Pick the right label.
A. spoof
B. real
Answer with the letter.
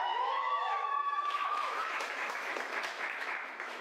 A